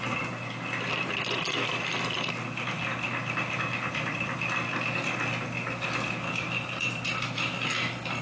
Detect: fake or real real